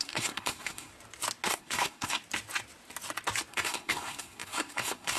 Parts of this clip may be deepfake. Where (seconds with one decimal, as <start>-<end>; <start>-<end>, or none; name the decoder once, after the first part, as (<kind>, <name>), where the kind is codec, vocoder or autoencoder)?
0.0-0.9 (codec, SNAC); 1.5-2.2; 3.5-5.2